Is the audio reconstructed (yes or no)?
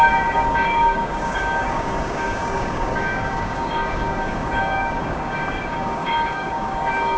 yes